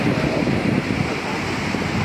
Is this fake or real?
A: real